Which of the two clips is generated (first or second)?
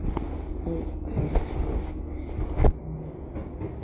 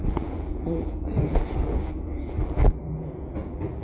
second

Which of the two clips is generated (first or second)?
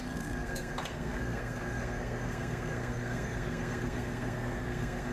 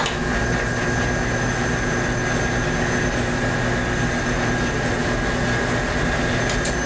first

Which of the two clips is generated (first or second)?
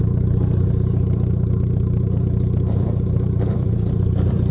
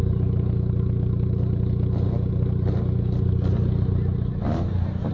first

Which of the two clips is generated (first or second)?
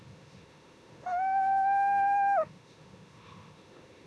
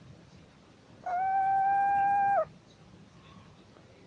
first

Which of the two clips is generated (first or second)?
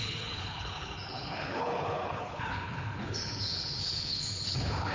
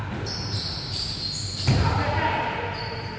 first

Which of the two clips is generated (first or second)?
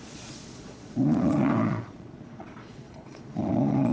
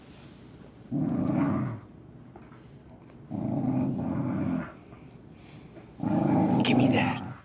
first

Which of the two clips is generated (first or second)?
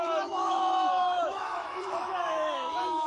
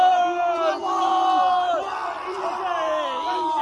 first